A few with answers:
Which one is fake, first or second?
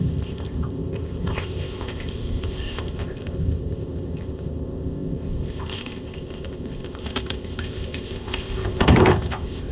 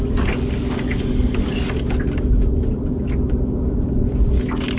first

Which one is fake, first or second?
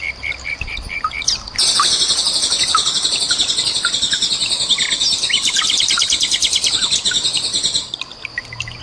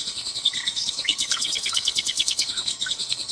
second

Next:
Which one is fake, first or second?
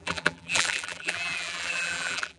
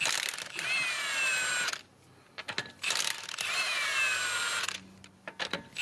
first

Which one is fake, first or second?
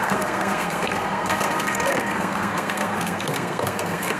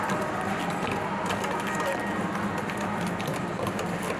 first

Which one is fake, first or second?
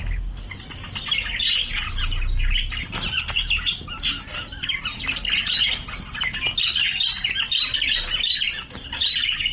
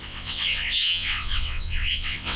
second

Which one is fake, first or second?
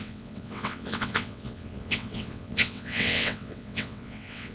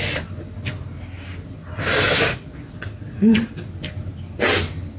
first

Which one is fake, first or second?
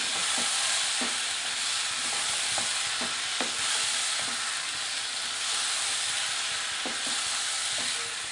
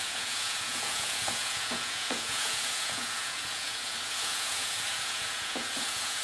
second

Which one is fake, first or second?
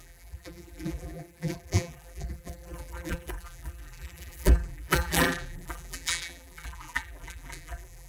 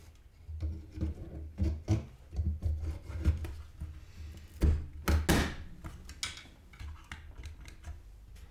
first